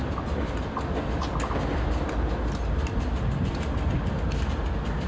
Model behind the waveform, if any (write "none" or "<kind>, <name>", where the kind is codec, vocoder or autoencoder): none